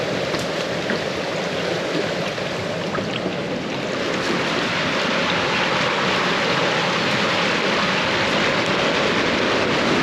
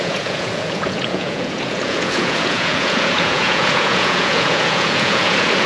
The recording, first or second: first